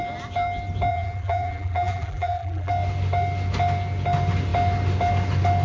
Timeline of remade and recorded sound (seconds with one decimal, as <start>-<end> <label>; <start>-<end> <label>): 0.0-0.9 recorded; 0.9-2.7 remade; 2.7-5.6 recorded